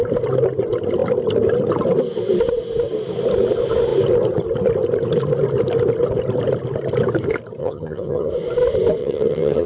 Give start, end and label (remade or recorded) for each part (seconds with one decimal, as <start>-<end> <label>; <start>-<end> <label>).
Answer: 0.0-7.6 recorded; 7.6-8.3 remade; 8.3-9.0 recorded; 9.0-9.7 remade